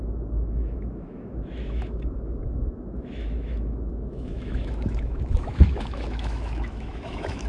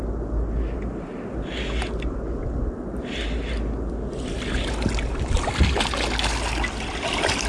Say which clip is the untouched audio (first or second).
second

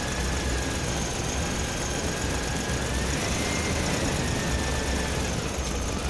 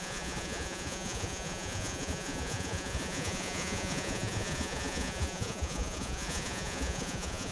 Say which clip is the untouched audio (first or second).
first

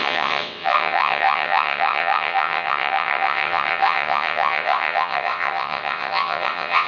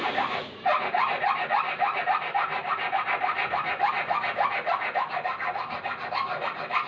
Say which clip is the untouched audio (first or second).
second